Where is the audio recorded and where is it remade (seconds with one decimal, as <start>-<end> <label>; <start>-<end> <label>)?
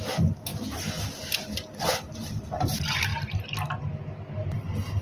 0.0-5.0 recorded